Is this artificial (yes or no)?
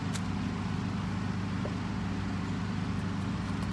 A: no